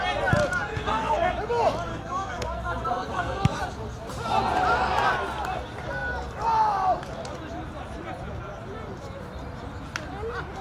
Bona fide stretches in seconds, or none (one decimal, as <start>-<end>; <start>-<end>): 0.0-0.7; 1.3-1.9; 3.6-10.6